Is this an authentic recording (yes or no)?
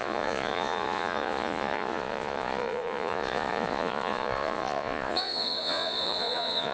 no